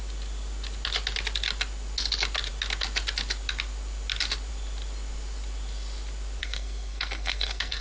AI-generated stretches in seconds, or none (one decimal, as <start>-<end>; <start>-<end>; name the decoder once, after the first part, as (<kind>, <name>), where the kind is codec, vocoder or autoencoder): 6.4-7.8 (codec, SNAC)